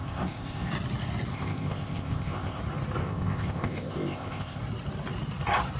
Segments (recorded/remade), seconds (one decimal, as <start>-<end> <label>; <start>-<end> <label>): 0.0-0.7 remade; 0.7-1.3 recorded; 1.3-2.6 remade; 2.6-3.0 recorded; 3.0-4.6 remade; 4.6-5.8 recorded